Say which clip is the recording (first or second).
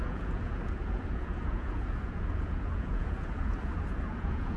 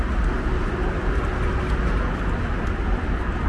second